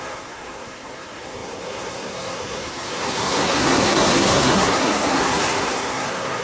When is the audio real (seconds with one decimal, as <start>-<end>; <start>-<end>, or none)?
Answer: none